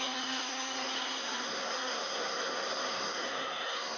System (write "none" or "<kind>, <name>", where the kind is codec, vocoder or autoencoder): codec, SNAC